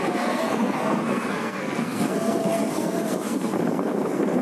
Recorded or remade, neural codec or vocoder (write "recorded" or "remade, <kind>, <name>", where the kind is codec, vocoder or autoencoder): remade, codec, SNAC